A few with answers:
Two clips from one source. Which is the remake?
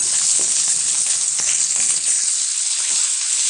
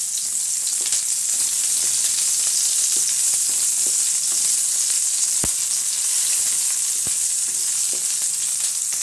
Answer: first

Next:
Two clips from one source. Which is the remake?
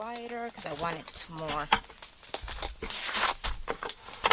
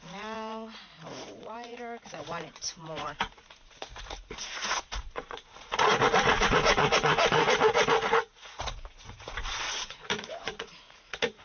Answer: second